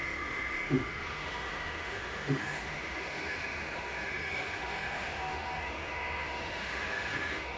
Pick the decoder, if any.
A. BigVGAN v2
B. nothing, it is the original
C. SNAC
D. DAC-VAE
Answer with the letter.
D